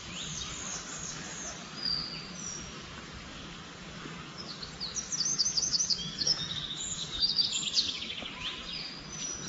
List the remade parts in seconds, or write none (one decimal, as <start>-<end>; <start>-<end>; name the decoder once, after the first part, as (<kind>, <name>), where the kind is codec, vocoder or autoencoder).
0.7-1.4 (codec, DAC); 3.3-4.7; 5.3-8.3